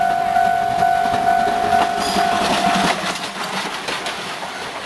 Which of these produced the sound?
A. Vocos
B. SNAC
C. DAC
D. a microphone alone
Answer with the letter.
D